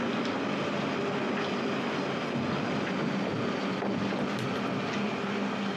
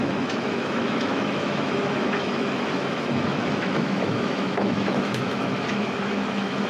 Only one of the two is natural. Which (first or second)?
first